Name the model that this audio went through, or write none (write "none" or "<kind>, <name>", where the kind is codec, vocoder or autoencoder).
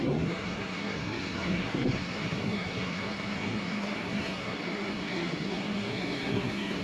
codec, SNAC